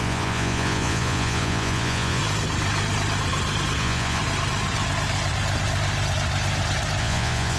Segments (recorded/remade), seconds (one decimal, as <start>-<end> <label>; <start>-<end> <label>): 0.0-2.2 remade; 2.2-3.8 recorded; 3.8-4.2 remade; 4.2-7.0 recorded; 7.0-7.6 remade